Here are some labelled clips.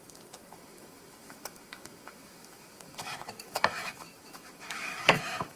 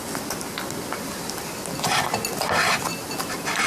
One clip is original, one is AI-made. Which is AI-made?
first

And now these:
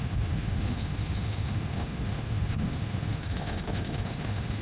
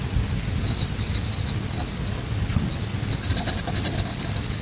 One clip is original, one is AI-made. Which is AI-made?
first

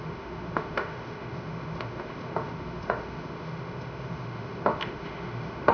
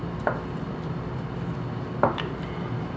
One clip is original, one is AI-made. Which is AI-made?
first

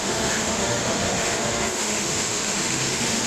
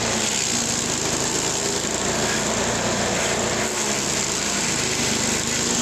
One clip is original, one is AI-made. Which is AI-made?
first